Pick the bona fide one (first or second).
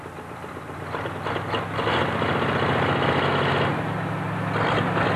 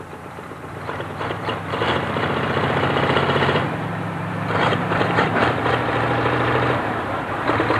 first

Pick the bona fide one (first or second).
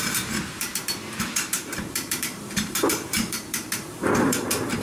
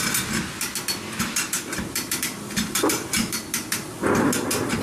second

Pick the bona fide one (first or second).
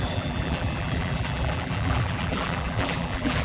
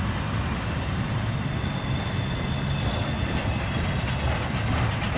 second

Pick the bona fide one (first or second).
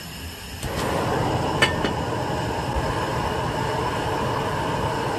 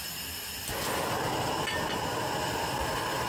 second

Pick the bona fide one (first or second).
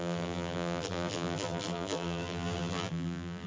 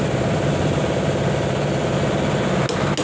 second